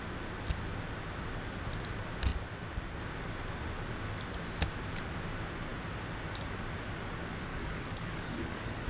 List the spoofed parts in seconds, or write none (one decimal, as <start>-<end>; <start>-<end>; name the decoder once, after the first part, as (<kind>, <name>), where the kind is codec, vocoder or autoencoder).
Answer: 7.5-8.9 (codec, DAC)